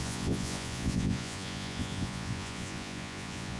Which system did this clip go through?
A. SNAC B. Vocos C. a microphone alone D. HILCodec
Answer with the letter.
B